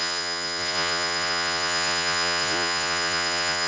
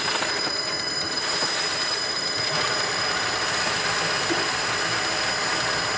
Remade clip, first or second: first